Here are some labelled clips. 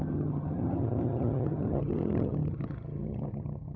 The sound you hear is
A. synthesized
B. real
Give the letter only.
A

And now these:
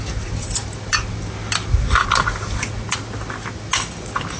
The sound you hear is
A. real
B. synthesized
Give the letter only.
A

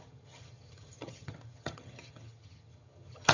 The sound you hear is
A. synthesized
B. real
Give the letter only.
A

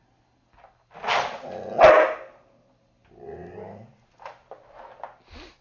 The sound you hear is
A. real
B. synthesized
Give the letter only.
A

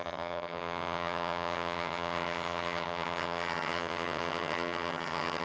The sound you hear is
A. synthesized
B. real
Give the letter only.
A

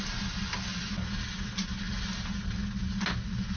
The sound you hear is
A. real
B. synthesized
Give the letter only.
A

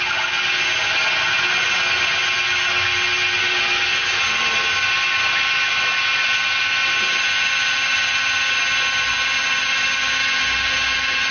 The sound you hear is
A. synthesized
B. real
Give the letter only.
B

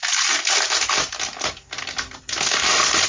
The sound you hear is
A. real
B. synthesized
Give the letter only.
A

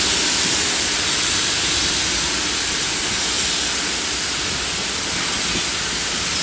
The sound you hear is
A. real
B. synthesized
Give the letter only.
A